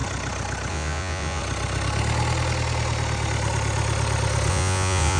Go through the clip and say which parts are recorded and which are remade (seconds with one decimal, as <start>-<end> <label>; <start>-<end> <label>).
0.0-0.7 recorded; 0.7-1.4 remade; 1.4-4.5 recorded; 4.5-5.2 remade